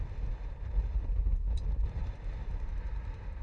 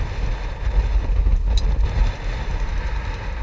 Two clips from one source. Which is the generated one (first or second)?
first